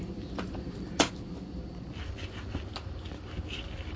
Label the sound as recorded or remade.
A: recorded